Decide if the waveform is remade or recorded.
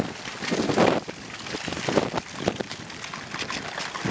recorded